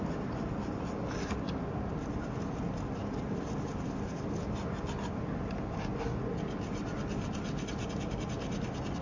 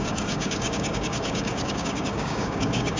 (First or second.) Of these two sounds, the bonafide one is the first